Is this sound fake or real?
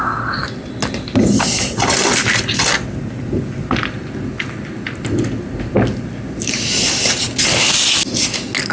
real